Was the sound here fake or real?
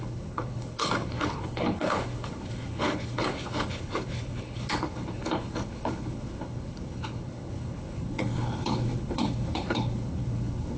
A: fake